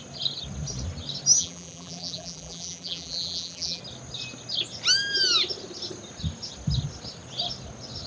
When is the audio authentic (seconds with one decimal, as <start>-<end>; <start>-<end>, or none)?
0.0-1.4; 3.8-8.1